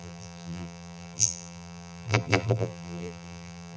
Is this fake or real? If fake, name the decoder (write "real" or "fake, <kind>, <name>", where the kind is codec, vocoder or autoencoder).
fake, vocoder, BigVGAN v2